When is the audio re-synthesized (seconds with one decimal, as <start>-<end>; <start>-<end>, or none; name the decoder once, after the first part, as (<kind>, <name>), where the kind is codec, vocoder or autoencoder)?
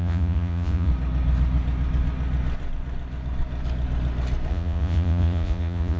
0.0-0.9 (vocoder, Vocos); 4.5-6.0